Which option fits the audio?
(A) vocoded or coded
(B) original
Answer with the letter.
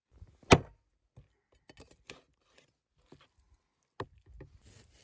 B